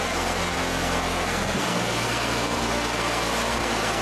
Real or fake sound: fake